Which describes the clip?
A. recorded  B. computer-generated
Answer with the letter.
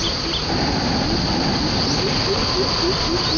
A